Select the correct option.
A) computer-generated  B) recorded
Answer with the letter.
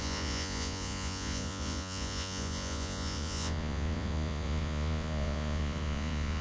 A